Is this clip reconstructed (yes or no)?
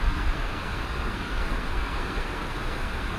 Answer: yes